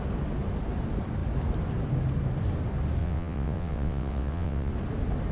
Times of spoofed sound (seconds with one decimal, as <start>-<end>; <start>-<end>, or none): 3.0-4.7